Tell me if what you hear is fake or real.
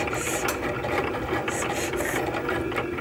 real